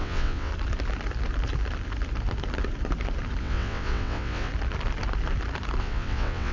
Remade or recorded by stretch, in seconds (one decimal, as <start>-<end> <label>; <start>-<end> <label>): 0.0-0.5 remade; 0.5-3.4 recorded; 3.4-4.5 remade; 4.5-5.8 recorded; 5.8-6.5 remade